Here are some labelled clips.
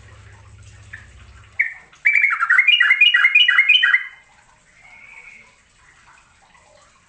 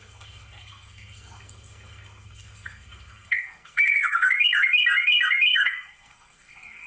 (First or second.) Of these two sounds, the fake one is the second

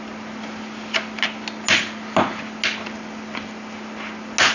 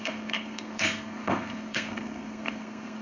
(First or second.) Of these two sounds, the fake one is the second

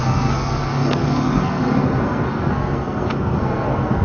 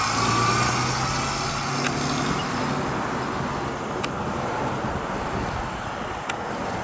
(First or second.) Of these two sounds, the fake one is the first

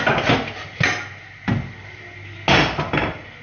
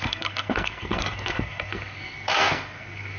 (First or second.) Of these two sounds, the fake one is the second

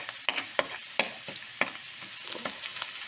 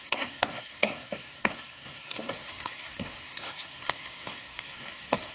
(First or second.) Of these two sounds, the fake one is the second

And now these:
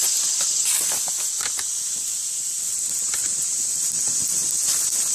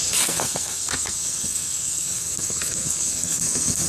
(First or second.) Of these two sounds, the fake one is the second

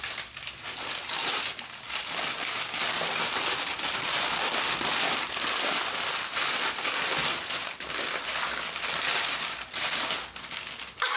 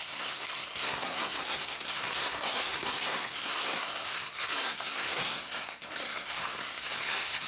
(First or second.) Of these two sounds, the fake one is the second